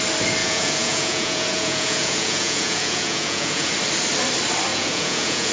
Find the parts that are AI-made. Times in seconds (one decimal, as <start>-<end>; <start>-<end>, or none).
0.4-3.7; 4.7-5.5